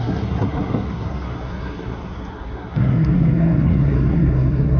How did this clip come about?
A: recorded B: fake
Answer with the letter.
B